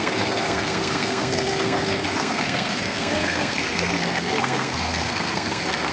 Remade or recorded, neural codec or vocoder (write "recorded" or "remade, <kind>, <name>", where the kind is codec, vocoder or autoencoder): remade, codec, SNAC